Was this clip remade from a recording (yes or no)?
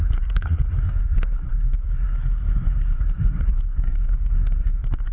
yes